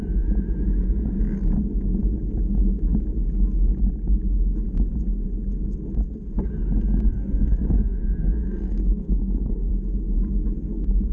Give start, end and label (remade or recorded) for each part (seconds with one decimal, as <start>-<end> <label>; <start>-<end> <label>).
0.0-7.1 recorded; 7.1-9.7 remade; 9.7-11.1 recorded